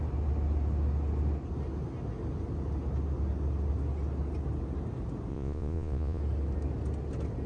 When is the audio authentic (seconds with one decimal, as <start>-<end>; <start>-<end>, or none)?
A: 0.0-5.3; 6.2-7.5